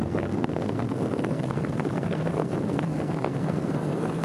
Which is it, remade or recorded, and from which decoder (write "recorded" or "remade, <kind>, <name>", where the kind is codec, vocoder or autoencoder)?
remade, codec, SNAC